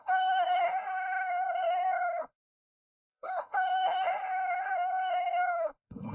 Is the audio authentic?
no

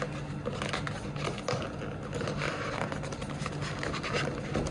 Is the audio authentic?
yes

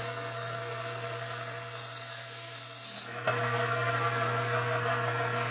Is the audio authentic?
no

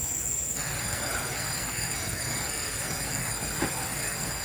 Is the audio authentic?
no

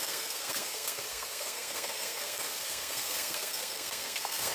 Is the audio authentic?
no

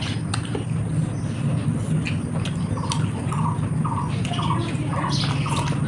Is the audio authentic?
yes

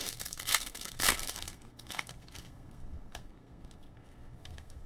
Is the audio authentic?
no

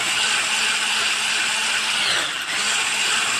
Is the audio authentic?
yes